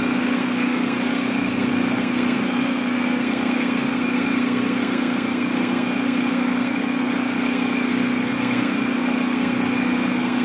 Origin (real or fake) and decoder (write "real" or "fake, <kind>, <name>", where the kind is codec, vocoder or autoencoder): fake, codec, SNAC